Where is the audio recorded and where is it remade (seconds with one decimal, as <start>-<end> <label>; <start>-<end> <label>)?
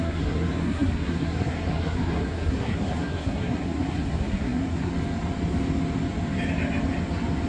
0.0-4.9 remade; 4.9-7.5 recorded